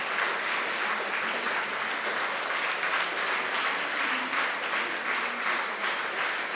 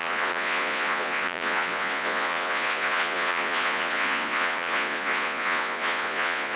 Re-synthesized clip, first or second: second